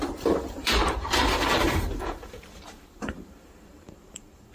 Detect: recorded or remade remade